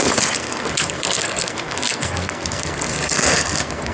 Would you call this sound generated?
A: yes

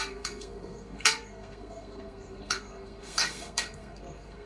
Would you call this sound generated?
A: yes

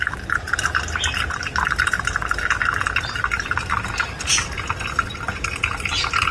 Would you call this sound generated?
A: no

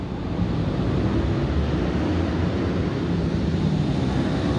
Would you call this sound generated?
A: no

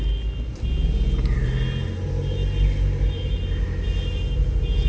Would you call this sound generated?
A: no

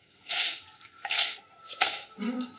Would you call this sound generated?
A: yes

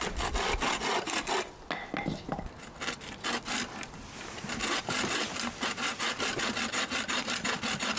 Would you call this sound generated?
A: no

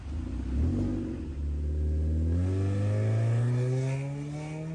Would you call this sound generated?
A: no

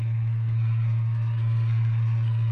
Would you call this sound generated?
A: yes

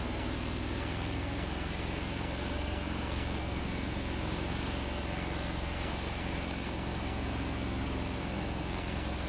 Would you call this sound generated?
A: yes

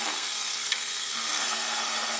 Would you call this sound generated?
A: yes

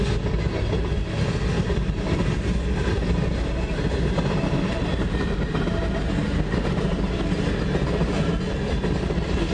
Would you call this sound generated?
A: no